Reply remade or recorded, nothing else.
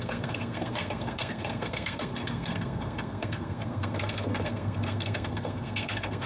remade